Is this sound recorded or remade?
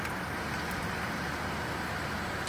recorded